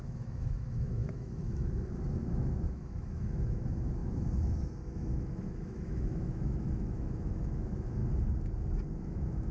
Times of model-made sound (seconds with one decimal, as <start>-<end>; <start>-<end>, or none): 0.0-8.0; 9.0-9.5